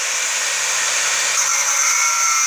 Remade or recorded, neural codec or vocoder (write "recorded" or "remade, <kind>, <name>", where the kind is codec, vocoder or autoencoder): recorded